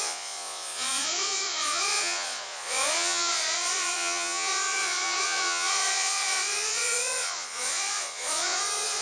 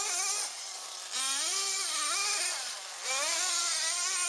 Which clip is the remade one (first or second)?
first